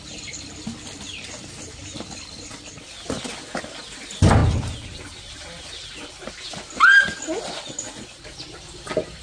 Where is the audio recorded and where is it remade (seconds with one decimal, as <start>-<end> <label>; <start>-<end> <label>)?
0.0-9.2 recorded